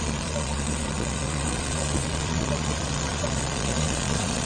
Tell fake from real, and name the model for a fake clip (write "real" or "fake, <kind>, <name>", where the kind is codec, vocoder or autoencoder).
fake, vocoder, Vocos